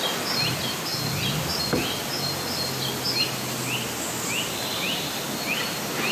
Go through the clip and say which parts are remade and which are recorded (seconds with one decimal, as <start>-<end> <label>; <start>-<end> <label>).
0.0-6.1 recorded